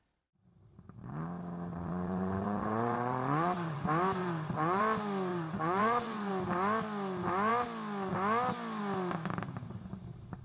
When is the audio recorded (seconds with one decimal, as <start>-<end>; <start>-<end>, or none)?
0.0-1.7; 3.8-4.2; 4.8-5.3; 6.3-10.4